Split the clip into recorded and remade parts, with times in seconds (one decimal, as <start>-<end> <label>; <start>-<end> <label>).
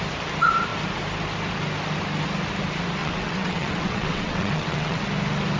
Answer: 0.0-3.0 recorded; 3.0-5.0 remade; 5.0-5.6 recorded